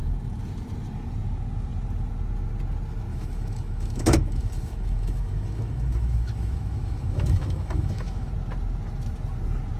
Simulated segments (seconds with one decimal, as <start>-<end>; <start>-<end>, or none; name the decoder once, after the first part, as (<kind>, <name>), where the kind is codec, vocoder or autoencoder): 3.1-8.3 (autoencoder, DAC-VAE)